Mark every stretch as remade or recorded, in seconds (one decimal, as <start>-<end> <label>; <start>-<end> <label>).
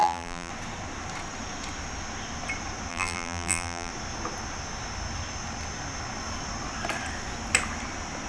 0.0-0.5 remade; 0.5-2.9 recorded; 2.9-3.9 remade; 3.9-8.3 recorded